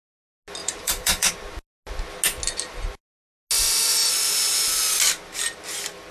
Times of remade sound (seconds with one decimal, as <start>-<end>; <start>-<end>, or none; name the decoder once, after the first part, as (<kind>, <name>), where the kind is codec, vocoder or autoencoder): 0.6-1.3 (vocoder, BigVGAN v2)